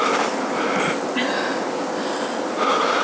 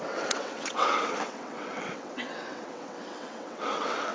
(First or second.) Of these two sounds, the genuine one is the first